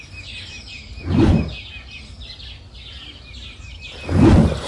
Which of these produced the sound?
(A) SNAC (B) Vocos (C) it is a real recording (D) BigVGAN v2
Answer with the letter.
C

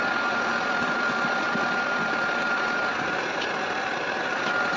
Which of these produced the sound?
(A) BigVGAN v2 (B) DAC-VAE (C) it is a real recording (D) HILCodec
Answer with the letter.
A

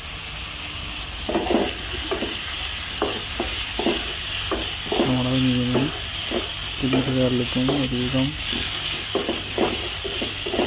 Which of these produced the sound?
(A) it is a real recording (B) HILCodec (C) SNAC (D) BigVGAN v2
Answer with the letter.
A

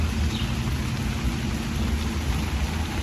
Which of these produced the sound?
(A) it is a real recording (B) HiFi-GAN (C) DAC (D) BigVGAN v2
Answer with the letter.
A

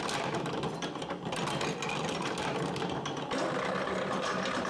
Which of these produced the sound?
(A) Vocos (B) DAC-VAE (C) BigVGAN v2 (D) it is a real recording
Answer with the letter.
D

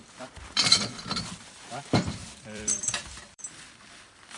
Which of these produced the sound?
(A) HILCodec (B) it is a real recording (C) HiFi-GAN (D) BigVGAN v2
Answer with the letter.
D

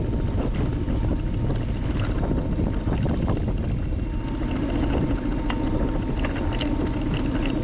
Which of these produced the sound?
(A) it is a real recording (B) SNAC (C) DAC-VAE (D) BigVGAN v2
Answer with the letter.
A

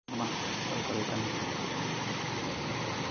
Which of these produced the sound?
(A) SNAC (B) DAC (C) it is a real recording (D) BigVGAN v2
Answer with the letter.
C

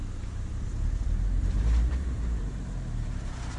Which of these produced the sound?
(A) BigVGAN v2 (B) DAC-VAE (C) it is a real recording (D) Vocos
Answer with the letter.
A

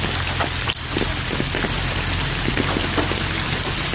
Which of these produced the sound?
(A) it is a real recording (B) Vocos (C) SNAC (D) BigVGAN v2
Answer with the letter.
D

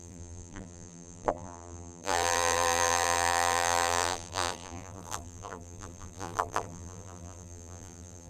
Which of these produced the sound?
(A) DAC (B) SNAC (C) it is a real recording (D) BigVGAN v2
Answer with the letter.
D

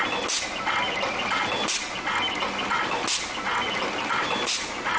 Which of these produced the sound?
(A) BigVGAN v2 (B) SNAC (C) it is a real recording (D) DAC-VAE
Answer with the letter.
C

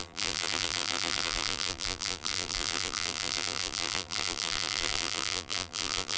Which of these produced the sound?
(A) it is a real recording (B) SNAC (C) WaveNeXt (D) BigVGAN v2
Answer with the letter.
D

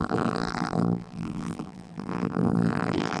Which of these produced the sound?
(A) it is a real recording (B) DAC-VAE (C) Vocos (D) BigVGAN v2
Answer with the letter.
D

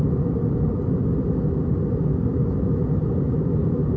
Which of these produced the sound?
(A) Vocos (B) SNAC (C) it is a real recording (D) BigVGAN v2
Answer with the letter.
C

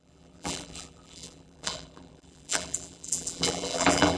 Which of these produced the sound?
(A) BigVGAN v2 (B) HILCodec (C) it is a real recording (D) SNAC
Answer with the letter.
A